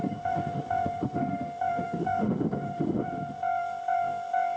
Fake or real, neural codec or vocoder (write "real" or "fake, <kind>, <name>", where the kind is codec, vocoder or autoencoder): fake, autoencoder, DAC-VAE